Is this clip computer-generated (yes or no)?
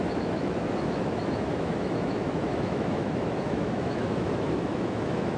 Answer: yes